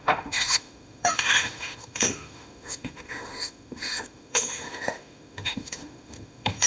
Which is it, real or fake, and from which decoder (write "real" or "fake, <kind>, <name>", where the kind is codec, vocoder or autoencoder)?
fake, autoencoder, DAC-VAE